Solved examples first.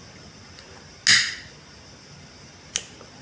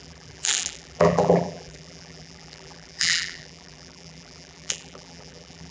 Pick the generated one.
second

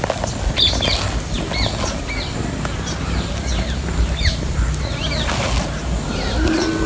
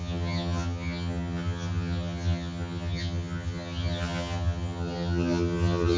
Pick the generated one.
second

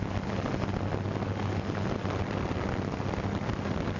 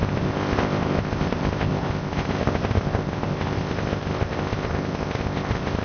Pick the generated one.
second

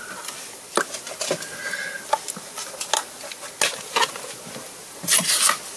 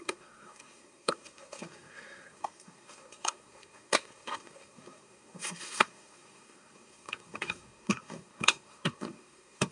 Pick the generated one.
second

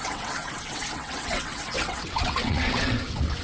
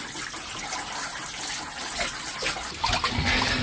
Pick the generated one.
first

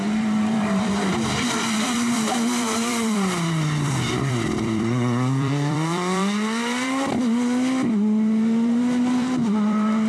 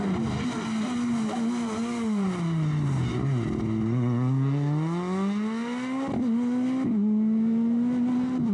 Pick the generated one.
first